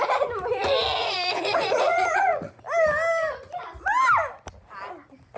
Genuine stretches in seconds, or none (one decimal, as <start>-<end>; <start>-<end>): 0.0-1.0; 2.5-5.4